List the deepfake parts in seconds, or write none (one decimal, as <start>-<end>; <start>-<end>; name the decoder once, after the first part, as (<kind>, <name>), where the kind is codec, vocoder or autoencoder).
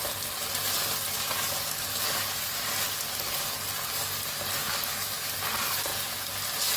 4.6-5.3 (autoencoder, DAC-VAE)